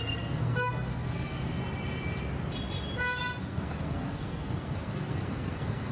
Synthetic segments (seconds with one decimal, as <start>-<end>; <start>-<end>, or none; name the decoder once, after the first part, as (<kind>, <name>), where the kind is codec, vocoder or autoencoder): 0.0-1.6 (codec, SNAC); 3.4-5.9